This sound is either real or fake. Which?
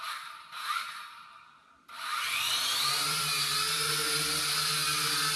real